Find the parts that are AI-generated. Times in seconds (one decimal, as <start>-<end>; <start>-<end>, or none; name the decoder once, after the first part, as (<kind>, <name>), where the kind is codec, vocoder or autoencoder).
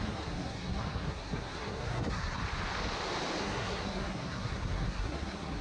0.0-2.4 (codec, SNAC); 3.4-5.6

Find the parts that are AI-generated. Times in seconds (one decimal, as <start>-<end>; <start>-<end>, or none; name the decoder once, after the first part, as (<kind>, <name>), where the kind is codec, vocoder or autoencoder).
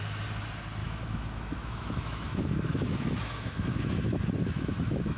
0.8-3.9 (autoencoder, DAC-VAE); 4.4-5.2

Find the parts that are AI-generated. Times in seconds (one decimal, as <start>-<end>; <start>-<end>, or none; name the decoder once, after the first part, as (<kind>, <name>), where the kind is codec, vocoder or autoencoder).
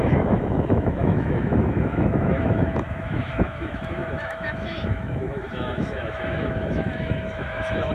0.0-7.9 (autoencoder, DAC-VAE)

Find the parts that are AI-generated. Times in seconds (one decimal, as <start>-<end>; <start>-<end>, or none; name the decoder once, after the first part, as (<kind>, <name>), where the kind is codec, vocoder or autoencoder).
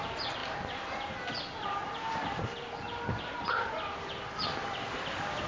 none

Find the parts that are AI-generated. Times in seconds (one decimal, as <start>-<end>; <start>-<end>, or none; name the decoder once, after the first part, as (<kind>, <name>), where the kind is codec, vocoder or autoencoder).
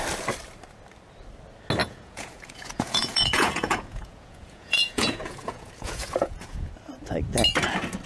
1.8-6.7 (vocoder, Vocos)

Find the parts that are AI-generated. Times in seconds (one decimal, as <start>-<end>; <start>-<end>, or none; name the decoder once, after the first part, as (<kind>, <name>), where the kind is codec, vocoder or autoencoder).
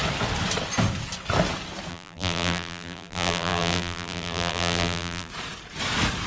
1.9-5.3 (vocoder, BigVGAN v2)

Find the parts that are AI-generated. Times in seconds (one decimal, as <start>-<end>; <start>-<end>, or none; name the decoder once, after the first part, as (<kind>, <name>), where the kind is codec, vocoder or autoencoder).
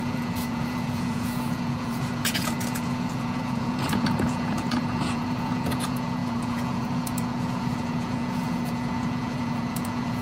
0.0-10.2 (vocoder, Vocos)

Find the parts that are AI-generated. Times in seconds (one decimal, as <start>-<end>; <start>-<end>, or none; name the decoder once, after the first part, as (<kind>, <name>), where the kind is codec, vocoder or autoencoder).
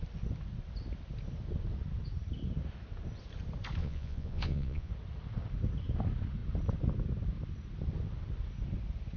3.8-4.9 (vocoder, Vocos)